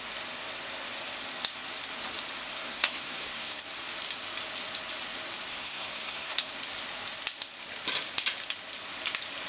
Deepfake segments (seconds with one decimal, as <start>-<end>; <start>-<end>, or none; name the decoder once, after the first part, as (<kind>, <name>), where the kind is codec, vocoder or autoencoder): 2.5-3.6 (codec, SNAC); 5.5-6.5